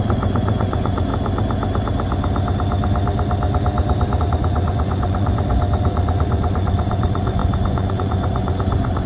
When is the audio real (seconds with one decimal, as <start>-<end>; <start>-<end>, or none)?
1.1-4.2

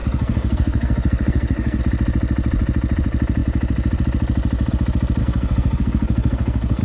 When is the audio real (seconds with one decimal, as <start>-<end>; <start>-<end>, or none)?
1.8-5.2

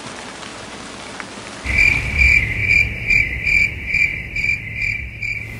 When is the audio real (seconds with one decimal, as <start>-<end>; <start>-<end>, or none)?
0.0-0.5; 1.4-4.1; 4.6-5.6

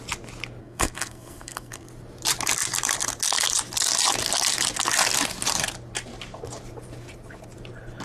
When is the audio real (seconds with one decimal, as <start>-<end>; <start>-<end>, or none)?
0.0-0.6; 1.9-8.0

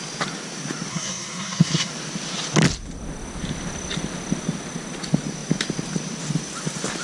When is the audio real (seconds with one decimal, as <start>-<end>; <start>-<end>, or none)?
0.0-0.9; 1.9-7.0

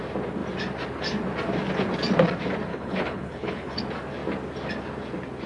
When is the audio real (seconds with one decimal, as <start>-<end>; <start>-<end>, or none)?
0.0-2.7; 3.8-5.5